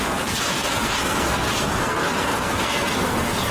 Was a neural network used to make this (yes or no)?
yes